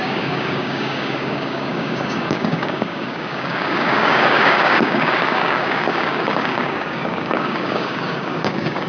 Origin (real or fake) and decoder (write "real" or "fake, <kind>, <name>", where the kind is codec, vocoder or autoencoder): fake, codec, DAC